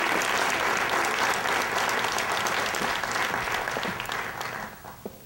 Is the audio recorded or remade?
recorded